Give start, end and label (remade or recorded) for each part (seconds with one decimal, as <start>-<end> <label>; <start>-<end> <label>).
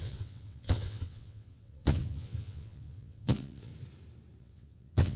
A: 0.0-3.7 remade; 3.7-4.4 recorded; 4.4-5.2 remade